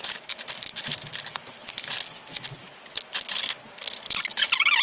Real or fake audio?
real